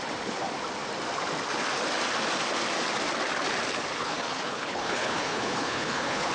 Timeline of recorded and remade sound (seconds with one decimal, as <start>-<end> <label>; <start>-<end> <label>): 0.0-4.0 recorded; 4.0-6.3 remade